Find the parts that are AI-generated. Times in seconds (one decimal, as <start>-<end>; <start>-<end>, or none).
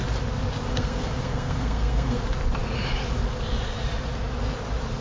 0.7-2.2